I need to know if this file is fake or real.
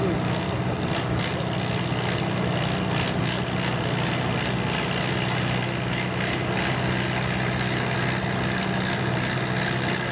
real